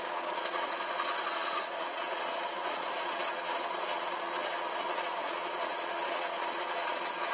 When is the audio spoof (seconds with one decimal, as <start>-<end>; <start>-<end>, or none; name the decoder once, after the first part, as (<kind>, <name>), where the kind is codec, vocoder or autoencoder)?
0.0-7.3 (vocoder, Vocos)